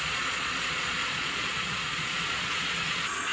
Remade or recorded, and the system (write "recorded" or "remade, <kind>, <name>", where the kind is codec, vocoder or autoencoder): remade, vocoder, Vocos